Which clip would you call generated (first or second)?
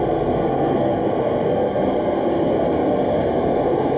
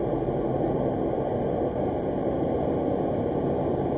first